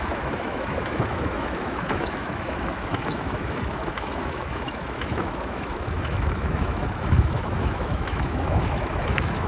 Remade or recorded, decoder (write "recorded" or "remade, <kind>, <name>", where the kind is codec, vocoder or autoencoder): remade, autoencoder, DAC-VAE